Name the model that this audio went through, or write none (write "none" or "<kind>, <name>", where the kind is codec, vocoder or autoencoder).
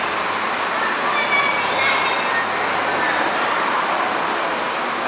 none